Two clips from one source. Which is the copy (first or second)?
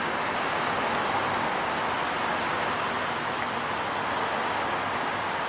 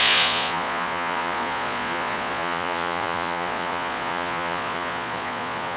second